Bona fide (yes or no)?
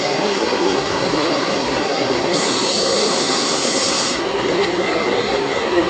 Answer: no